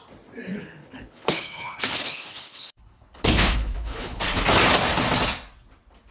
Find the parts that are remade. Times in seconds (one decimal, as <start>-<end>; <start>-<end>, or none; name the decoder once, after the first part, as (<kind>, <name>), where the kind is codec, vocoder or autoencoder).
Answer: 0.5-4.2 (codec, HILCodec)